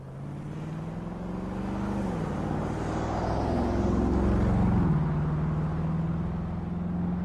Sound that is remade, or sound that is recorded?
recorded